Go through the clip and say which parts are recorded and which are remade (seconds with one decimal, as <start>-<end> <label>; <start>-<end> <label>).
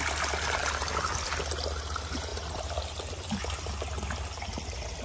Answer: 0.0-5.0 recorded